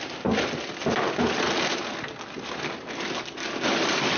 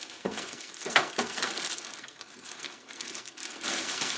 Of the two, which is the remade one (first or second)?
second